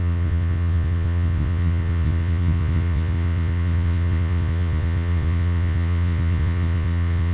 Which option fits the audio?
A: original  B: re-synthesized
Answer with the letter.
B